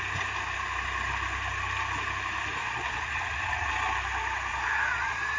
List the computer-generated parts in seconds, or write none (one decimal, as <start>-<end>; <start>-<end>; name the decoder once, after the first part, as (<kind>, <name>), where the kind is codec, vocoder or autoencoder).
2.6-3.7 (vocoder, Vocos); 4.5-5.4